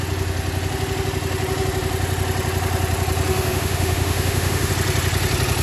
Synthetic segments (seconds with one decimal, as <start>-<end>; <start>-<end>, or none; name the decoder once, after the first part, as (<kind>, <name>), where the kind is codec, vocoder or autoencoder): 3.3-4.7 (autoencoder, DAC-VAE)